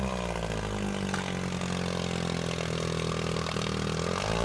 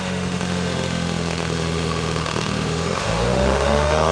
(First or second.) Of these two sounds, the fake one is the second